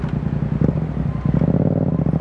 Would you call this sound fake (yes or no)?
no